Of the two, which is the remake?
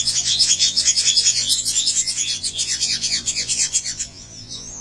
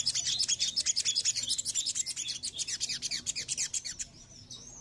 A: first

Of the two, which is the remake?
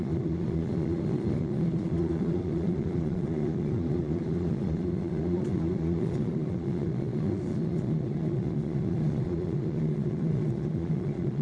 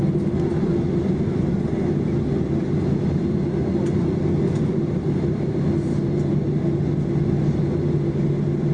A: first